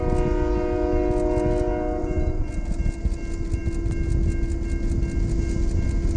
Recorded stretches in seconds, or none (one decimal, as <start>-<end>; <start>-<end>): 0.0-2.0; 2.5-6.2